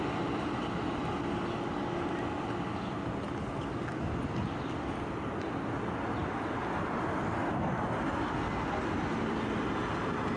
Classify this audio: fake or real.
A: real